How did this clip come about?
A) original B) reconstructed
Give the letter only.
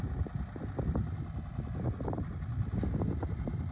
A